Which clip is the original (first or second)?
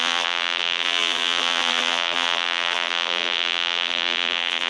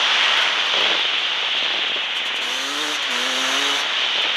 second